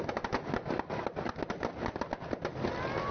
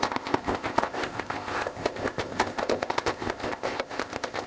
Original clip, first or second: first